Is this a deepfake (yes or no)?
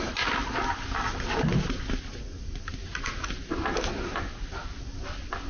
no